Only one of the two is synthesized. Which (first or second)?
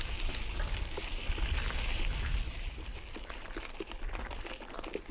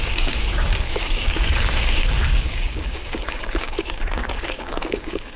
second